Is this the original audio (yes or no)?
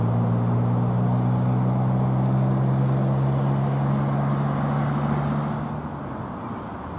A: yes